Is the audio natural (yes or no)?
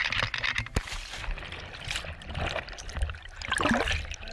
yes